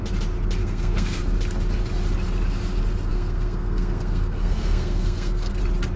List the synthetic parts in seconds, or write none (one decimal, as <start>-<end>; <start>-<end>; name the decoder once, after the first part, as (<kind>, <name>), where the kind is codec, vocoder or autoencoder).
0.6-1.2 (codec, SNAC); 3.1-5.6